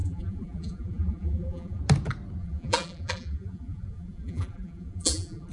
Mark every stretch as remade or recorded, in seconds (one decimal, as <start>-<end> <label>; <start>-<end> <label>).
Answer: 0.0-1.8 remade; 1.8-2.4 recorded; 2.4-5.5 remade